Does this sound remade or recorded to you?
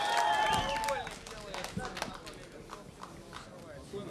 recorded